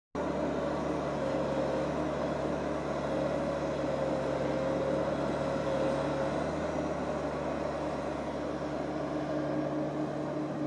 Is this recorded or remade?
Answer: recorded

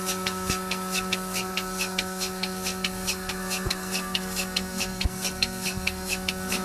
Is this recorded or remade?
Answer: remade